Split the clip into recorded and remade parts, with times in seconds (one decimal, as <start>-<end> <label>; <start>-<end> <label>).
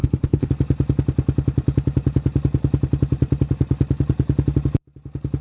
0.0-0.5 remade; 0.5-5.4 recorded